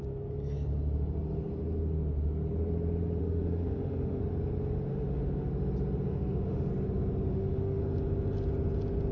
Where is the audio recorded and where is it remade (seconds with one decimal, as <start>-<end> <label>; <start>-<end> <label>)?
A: 0.0-3.2 recorded; 3.2-4.2 remade; 4.2-4.9 recorded; 4.9-5.5 remade; 5.5-6.1 recorded; 6.1-6.7 remade; 6.7-7.3 recorded; 7.3-7.8 remade; 7.8-9.1 recorded